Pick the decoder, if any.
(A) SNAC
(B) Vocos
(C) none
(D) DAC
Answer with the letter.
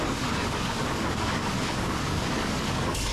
D